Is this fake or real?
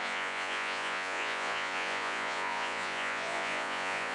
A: fake